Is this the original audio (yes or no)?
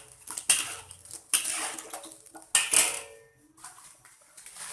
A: yes